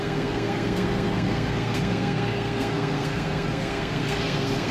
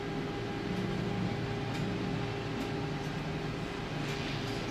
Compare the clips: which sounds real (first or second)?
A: second